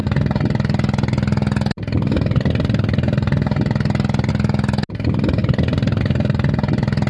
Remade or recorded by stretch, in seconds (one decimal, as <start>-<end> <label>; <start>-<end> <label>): 0.0-5.4 recorded; 5.4-6.0 remade; 6.0-7.1 recorded